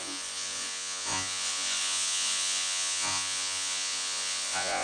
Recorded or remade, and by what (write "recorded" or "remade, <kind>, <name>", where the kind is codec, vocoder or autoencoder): remade, vocoder, Vocos